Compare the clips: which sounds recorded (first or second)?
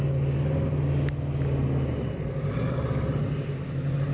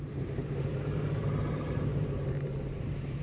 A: first